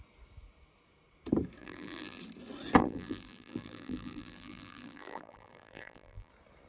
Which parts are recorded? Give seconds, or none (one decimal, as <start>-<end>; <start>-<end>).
0.0-1.6; 2.2-2.8; 6.3-6.7